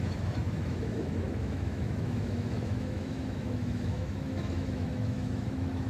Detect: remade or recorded remade